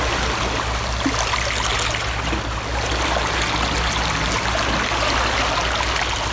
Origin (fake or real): real